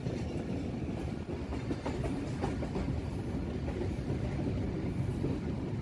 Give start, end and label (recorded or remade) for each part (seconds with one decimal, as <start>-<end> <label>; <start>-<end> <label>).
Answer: 0.0-5.8 recorded